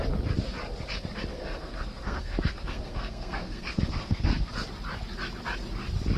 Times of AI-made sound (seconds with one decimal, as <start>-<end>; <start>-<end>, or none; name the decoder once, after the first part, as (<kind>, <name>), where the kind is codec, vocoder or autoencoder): 1.3-4.5 (codec, SNAC)